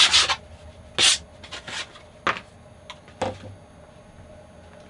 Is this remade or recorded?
recorded